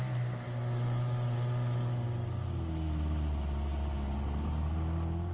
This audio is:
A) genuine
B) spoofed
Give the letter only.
A